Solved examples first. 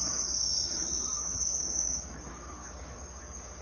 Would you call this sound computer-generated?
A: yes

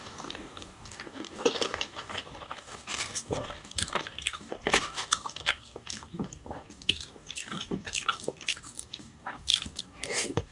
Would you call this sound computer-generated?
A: yes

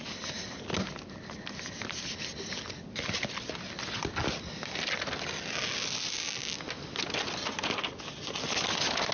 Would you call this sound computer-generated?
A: no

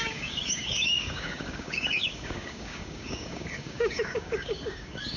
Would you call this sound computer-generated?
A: yes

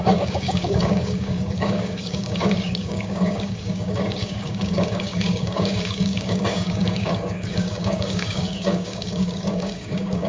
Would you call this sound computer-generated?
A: yes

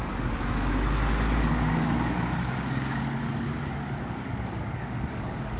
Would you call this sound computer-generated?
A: yes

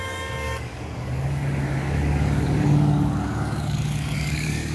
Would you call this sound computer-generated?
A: yes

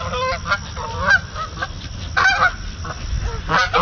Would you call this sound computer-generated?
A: no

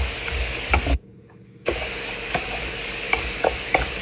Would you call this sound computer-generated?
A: yes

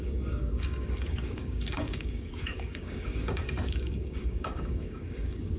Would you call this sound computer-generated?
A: yes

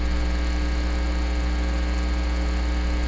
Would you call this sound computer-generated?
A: no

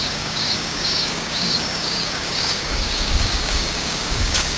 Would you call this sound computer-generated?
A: yes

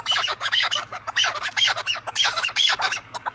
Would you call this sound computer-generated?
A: yes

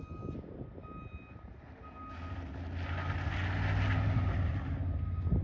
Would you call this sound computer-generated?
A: no